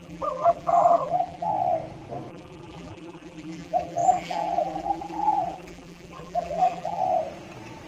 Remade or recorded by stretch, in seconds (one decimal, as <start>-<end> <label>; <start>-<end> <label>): 0.0-1.5 remade; 1.5-2.3 recorded; 2.3-7.0 remade; 7.0-7.9 recorded